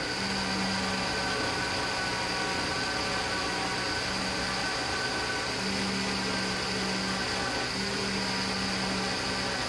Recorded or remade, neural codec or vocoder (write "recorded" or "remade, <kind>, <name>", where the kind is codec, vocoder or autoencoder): recorded